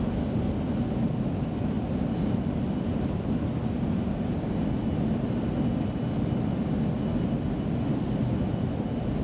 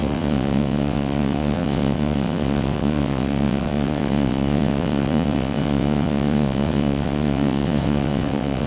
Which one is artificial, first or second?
second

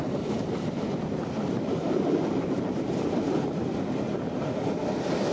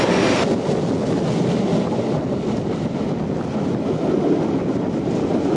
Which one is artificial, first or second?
first